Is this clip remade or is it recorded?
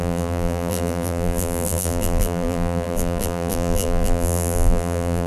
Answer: remade